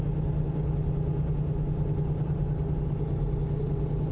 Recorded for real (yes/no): yes